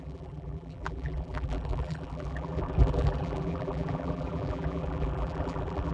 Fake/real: fake